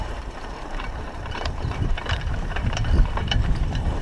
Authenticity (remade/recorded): remade